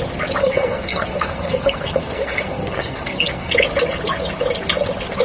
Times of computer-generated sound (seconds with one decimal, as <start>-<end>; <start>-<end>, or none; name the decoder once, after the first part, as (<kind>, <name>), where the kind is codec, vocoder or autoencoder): 0.4-3.5 (codec, SNAC)